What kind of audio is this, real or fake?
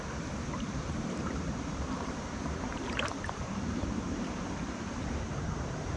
fake